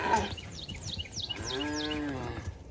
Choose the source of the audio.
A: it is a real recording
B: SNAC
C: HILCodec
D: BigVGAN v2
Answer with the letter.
A